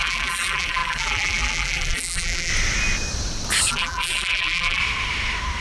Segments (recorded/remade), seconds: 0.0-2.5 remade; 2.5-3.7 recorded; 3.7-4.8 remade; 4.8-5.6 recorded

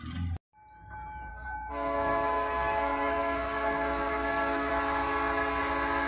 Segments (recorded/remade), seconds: 0.0-1.3 recorded; 1.3-4.7 remade; 4.7-6.1 recorded

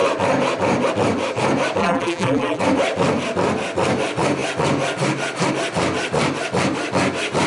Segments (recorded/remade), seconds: 0.0-1.8 recorded; 1.8-2.6 remade; 2.6-7.5 recorded

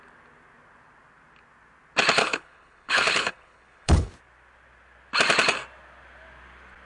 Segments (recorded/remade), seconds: 0.0-2.2 recorded; 2.2-4.1 remade; 4.1-6.9 recorded